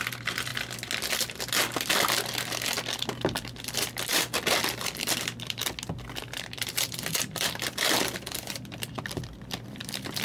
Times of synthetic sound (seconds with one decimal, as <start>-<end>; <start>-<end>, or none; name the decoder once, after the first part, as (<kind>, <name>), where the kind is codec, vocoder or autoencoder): 0.0-0.5 (vocoder, BigVGAN v2); 3.2-5.6; 6.2-10.2